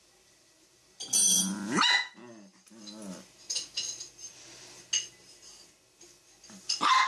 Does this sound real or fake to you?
real